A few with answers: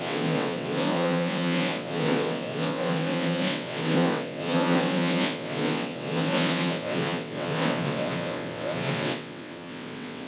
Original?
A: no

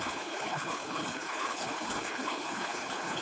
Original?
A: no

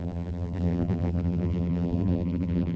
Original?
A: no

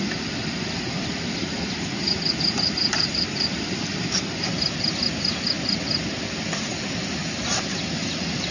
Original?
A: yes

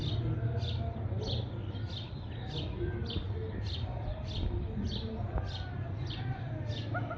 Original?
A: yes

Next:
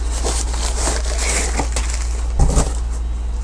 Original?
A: yes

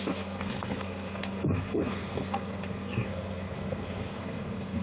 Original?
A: no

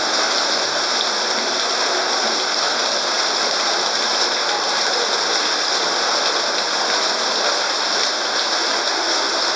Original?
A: yes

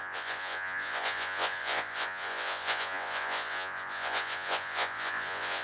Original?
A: no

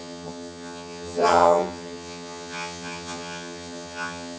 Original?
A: no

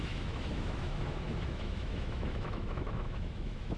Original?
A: no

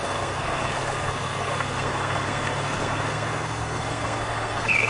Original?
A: no